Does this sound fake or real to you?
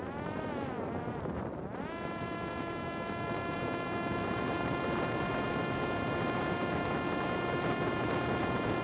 fake